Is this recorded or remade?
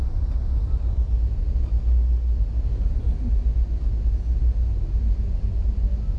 recorded